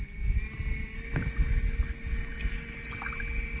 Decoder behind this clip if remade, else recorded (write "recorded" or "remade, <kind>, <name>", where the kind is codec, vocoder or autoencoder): recorded